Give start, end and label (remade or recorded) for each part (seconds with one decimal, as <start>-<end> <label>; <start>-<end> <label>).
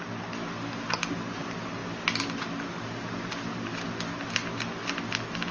0.0-5.5 recorded